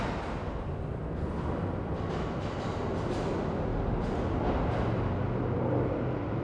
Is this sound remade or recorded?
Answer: recorded